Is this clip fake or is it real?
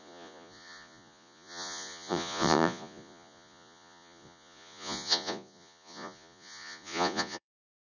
fake